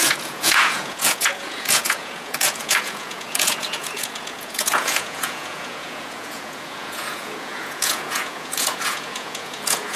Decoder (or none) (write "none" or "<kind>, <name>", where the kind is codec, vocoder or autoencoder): vocoder, Vocos